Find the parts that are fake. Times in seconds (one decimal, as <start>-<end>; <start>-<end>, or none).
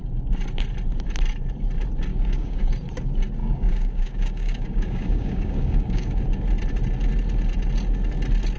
2.1-2.7; 3.4-6.2